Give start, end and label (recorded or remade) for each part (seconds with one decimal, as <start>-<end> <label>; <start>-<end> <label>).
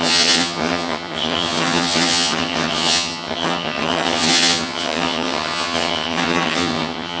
0.0-7.2 remade